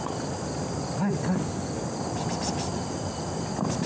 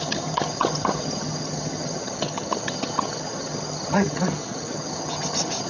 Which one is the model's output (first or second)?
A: second